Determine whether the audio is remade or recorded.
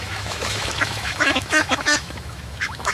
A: remade